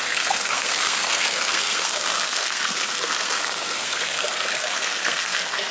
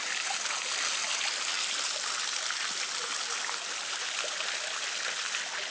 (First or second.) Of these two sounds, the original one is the second